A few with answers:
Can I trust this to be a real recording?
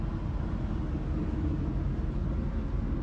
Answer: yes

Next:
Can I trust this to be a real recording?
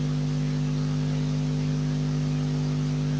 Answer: yes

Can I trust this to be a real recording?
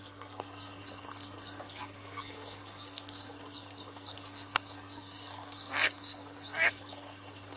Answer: no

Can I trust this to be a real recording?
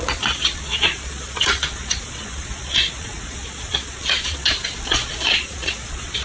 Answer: no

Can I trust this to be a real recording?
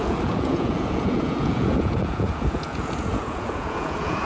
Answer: no